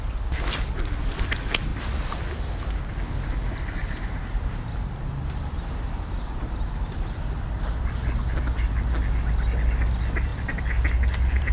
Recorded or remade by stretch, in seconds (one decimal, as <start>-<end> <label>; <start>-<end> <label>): 0.0-3.8 recorded; 3.8-8.4 remade; 8.4-11.5 recorded